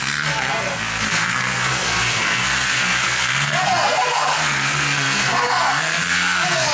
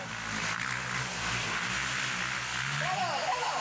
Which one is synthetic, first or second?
first